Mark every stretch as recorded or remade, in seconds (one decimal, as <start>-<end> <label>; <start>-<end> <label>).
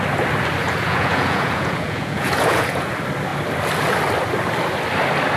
0.0-0.6 recorded; 0.6-2.9 remade; 2.9-5.4 recorded